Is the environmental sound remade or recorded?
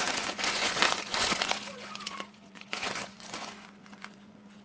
remade